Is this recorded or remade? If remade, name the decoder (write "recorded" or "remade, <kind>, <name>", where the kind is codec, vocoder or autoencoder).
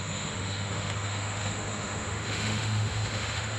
remade, autoencoder, DAC-VAE